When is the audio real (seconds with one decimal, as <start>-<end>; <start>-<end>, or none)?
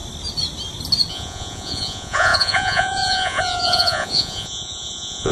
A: 0.0-1.1